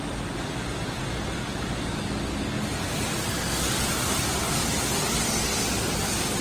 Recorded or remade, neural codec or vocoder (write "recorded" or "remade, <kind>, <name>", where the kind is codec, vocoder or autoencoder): recorded